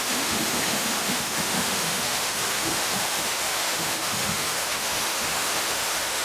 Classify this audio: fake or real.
fake